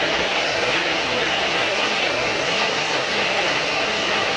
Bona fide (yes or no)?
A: no